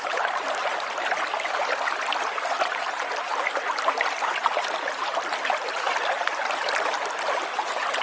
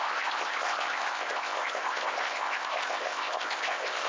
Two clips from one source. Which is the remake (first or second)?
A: second